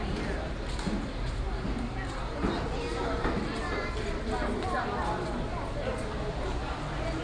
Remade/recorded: recorded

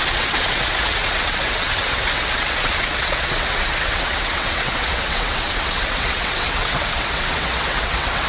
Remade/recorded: remade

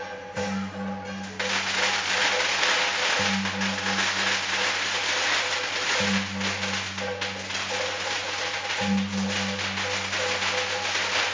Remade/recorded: recorded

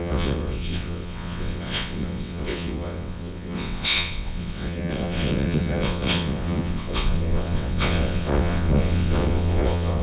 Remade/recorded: remade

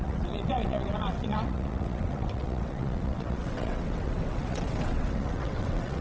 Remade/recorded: remade